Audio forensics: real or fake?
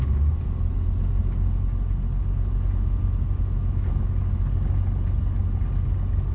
real